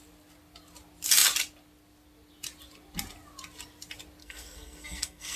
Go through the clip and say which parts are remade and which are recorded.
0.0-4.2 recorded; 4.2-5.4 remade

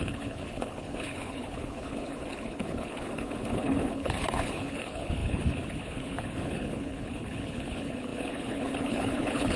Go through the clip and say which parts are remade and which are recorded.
0.0-9.6 remade